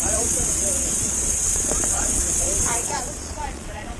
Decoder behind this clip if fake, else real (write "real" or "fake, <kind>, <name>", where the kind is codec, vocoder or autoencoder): fake, vocoder, Vocos